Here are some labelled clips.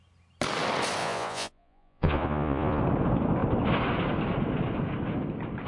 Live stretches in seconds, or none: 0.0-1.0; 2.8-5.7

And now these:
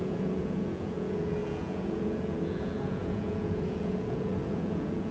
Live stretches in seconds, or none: none

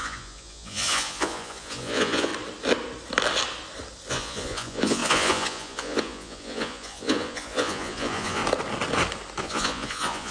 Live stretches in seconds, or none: 2.3-4.1; 8.4-9.4

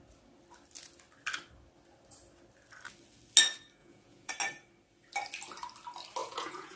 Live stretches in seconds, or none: 0.0-3.8; 4.3-6.2

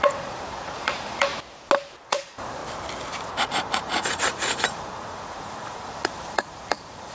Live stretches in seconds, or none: 1.3-2.1; 2.6-3.1

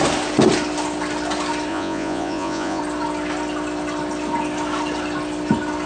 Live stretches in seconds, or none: 0.0-1.7; 2.8-5.9

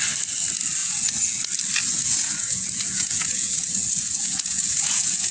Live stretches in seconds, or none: 0.0-0.8; 1.4-1.9

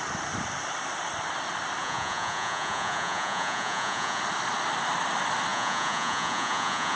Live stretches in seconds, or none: 0.0-1.8; 4.2-5.5